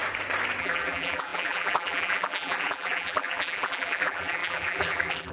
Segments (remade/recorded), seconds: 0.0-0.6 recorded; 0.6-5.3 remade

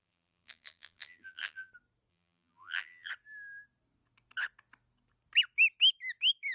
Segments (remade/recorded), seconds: 0.0-1.7 remade; 1.7-2.1 recorded; 2.1-3.1 remade; 3.1-6.5 recorded

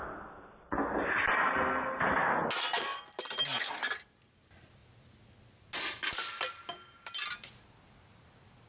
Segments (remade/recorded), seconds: 0.0-8.7 recorded

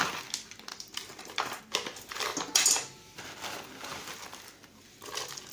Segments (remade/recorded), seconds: 0.0-0.7 recorded; 0.7-1.6 remade; 1.6-5.5 recorded

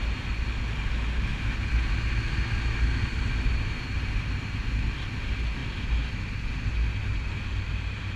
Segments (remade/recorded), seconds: 0.0-3.1 recorded; 3.1-4.6 remade; 4.6-7.5 recorded; 7.5-8.2 remade

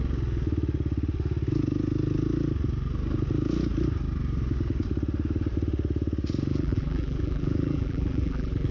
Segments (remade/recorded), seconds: 0.0-6.5 recorded; 6.5-8.7 remade

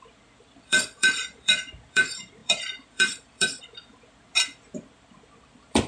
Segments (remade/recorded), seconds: 0.0-4.3 remade; 4.3-4.8 recorded; 4.8-5.9 remade